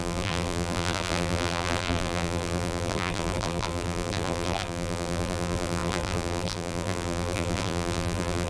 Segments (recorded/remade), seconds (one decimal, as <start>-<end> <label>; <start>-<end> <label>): 0.0-8.5 remade